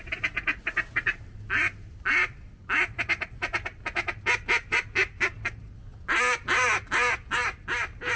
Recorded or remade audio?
recorded